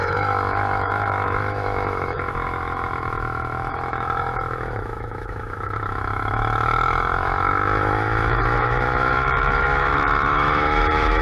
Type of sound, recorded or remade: remade